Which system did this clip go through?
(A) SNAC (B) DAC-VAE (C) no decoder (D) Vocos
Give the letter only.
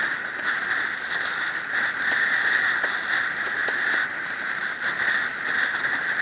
C